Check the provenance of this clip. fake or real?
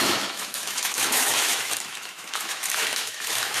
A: fake